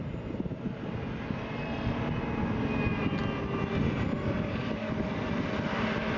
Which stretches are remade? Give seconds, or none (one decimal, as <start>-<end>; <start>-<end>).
none